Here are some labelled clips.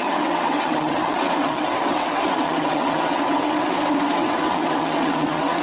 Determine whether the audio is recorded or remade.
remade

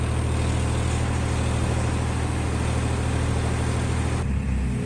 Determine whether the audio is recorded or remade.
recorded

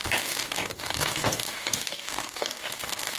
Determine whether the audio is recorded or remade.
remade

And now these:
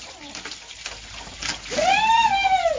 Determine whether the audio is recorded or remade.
recorded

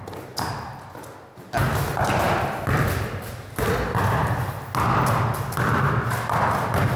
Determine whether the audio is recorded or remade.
recorded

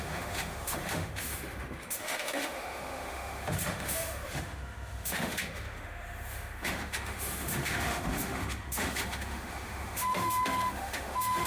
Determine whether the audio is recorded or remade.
remade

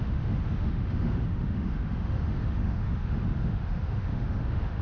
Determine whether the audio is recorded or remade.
remade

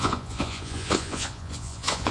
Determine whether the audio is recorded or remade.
remade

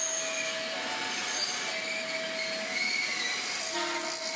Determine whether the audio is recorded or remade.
recorded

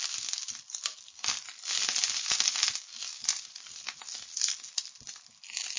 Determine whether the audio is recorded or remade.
recorded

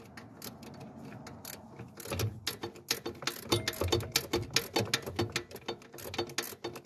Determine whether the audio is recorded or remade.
recorded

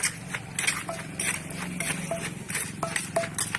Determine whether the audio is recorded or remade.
recorded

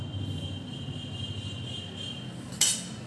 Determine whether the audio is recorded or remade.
recorded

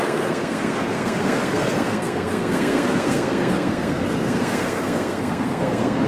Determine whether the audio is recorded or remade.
remade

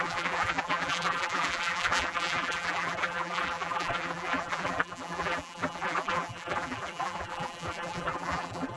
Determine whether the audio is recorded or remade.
remade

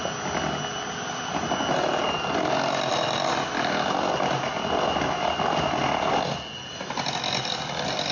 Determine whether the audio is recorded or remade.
recorded